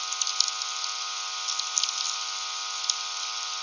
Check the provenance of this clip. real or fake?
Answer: real